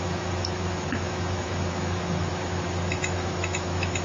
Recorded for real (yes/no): no